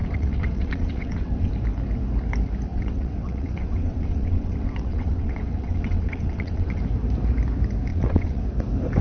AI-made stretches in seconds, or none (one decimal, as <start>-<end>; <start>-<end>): 0.0-1.5; 2.7-6.8; 7.9-8.4